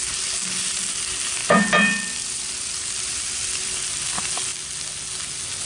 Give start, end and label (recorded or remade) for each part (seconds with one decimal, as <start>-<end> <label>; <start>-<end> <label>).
0.0-1.4 recorded; 1.4-3.8 remade; 3.8-5.7 recorded